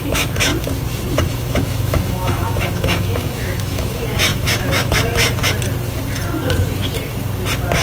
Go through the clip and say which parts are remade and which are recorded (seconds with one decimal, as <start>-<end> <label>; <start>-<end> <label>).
0.0-0.5 remade; 0.5-1.2 recorded; 1.2-5.4 remade; 5.4-7.8 recorded